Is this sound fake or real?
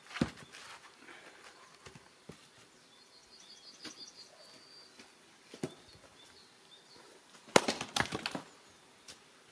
real